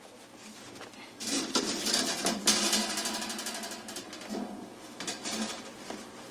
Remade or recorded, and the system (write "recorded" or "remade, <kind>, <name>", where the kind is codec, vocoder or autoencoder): recorded